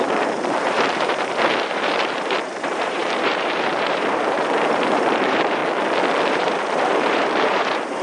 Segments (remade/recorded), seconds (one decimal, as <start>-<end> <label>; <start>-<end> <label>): 0.0-5.6 remade; 5.6-6.3 recorded; 6.3-8.0 remade